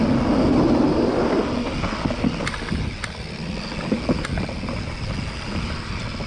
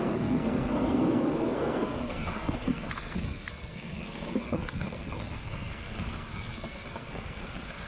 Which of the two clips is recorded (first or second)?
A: first